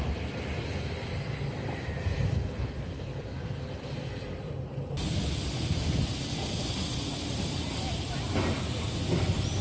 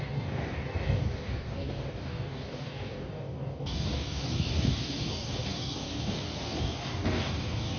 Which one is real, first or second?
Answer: first